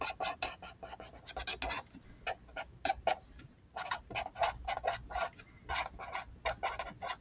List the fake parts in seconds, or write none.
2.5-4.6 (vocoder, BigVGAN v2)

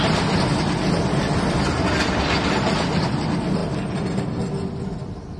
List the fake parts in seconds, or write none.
none

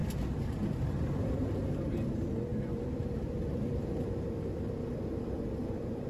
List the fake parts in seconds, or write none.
0.8-1.4 (vocoder, BigVGAN v2); 1.9-6.1

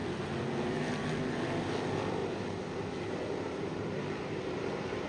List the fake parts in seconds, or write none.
2.2-5.1 (vocoder, BigVGAN v2)